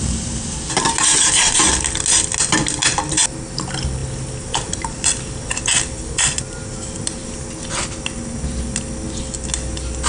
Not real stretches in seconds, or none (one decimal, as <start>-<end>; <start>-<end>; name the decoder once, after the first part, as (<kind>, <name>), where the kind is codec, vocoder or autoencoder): none